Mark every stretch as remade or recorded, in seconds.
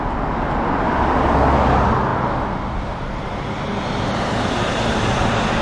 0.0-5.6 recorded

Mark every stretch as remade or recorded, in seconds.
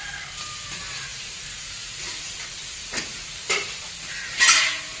0.0-1.1 recorded; 1.1-3.9 remade; 3.9-5.0 recorded